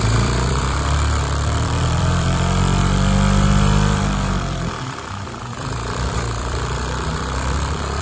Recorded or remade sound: remade